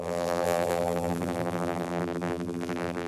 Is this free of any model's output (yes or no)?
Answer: no